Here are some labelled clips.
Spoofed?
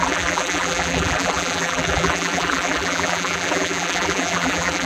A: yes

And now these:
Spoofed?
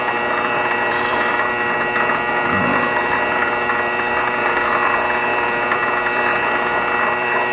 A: yes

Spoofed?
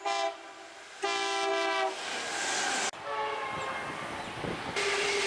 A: no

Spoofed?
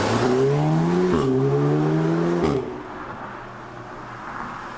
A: no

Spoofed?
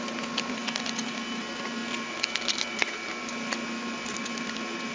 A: no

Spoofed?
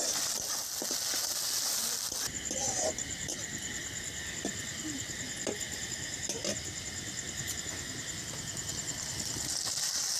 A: no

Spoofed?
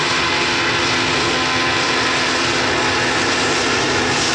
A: no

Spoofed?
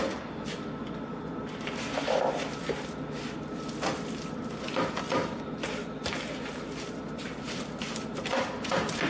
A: yes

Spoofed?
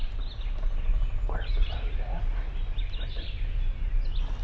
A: no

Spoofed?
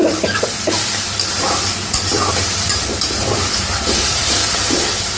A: yes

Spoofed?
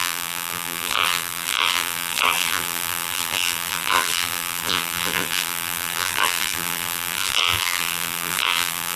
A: yes